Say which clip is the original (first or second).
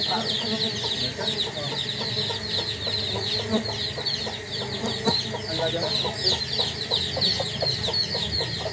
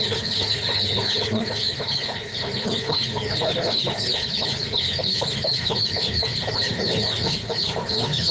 first